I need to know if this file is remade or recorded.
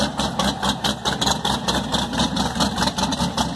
recorded